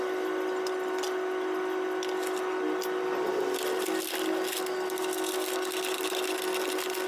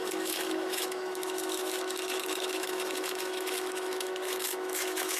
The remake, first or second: second